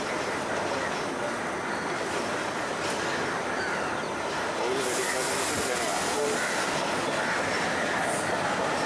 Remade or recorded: recorded